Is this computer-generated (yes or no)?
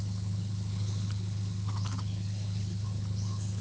yes